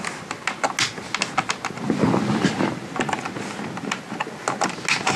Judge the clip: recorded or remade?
recorded